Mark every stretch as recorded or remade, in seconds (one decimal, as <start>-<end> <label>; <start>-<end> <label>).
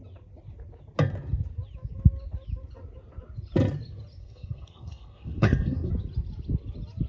0.0-4.2 recorded; 4.2-5.9 remade; 5.9-7.1 recorded